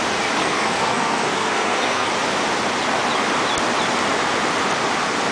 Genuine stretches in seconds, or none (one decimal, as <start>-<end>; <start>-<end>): 0.0-0.4; 2.1-5.3